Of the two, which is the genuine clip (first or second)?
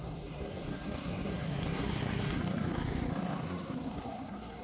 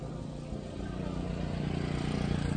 second